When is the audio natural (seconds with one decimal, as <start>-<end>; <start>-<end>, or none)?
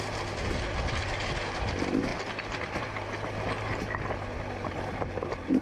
0.0-5.6